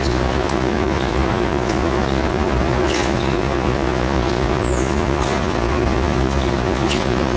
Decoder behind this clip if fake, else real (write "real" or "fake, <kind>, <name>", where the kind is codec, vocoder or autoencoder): fake, vocoder, Vocos